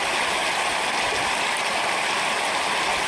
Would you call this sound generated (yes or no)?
no